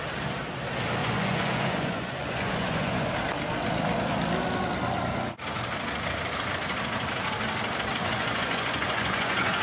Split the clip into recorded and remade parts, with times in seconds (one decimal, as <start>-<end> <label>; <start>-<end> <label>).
0.0-1.0 recorded; 1.0-3.1 remade; 3.1-8.0 recorded; 8.0-9.6 remade